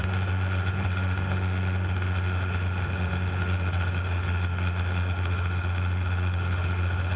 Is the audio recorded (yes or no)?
no